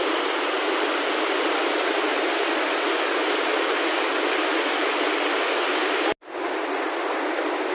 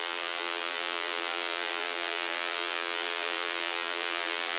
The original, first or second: first